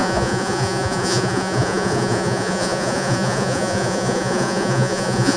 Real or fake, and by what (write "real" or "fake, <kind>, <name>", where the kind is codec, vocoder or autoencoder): fake, vocoder, Vocos